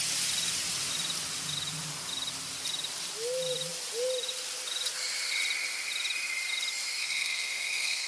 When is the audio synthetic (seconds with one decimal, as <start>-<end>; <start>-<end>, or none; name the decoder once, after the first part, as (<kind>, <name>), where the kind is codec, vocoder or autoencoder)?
7.0-8.1 (codec, SNAC)